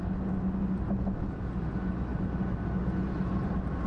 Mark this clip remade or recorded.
recorded